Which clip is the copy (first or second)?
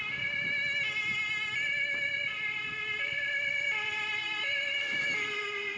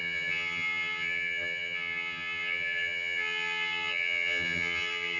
second